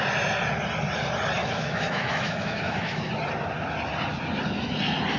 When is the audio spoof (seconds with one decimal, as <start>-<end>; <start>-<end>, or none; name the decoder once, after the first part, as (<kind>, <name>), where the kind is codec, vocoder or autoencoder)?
1.4-3.1 (autoencoder, DAC-VAE)